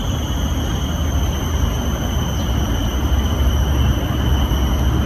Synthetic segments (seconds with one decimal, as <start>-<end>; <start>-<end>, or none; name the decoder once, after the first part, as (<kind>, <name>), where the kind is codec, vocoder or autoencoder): none